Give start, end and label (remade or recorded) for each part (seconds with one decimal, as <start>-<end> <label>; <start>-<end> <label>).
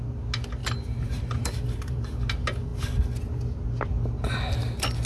0.0-0.6 recorded; 0.6-2.2 remade; 2.2-5.1 recorded